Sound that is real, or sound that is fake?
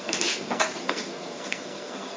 fake